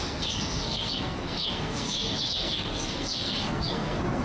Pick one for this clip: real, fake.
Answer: fake